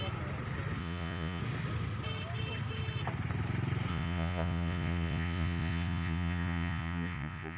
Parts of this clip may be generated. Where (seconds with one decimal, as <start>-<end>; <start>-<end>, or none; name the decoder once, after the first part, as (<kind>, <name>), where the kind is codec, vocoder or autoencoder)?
0.8-1.4 (vocoder, Vocos); 3.9-7.6